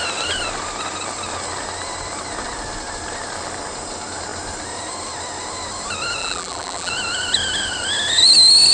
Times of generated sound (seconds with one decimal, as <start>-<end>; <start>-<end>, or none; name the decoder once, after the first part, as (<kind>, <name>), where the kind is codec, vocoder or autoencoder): 6.2-6.9 (vocoder, BigVGAN v2)